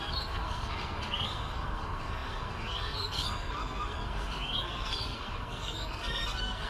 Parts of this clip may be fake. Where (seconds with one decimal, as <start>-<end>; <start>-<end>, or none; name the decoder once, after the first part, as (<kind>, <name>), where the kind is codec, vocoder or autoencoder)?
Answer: 0.0-6.7 (codec, SNAC)